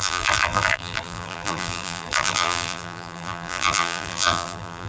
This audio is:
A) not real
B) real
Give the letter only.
A